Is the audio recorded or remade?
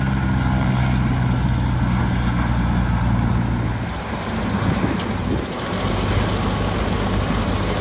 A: recorded